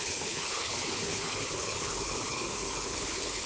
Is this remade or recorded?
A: remade